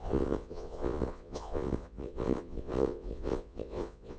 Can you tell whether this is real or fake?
fake